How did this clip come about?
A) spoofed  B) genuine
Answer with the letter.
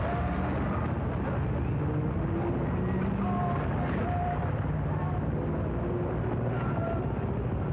B